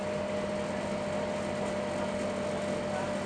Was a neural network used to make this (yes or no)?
no